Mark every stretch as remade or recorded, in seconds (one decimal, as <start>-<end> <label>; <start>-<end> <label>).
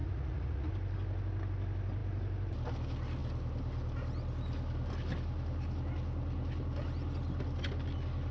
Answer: 0.0-0.7 remade; 0.7-8.3 recorded